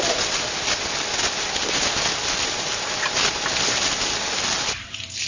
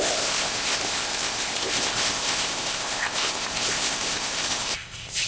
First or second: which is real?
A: first